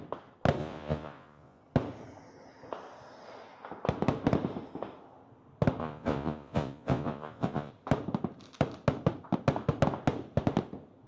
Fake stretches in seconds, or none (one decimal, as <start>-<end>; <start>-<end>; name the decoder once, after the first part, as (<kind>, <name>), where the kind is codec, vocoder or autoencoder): 0.6-1.6 (vocoder, Vocos); 5.8-7.7